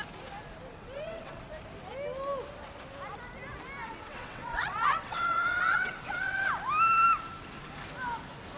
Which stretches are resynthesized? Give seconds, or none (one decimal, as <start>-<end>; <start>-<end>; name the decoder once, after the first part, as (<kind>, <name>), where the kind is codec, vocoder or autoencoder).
0.7-1.4 (vocoder, WaveNeXt); 3.8-6.5